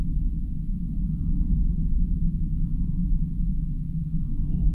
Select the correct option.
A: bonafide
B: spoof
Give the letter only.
A